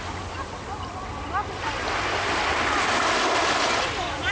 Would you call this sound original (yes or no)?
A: yes